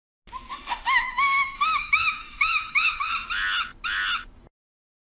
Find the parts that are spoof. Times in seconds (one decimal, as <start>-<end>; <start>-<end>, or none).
0.5-3.1